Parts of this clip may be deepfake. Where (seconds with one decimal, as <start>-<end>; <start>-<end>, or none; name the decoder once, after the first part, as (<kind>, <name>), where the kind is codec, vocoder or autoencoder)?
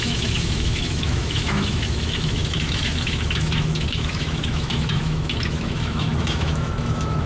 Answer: 0.0-7.3 (autoencoder, DAC-VAE)